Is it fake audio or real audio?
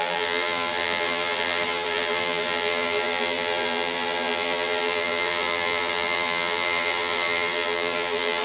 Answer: fake